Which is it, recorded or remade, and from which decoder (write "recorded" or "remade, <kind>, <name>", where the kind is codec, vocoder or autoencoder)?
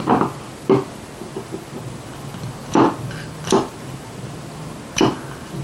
recorded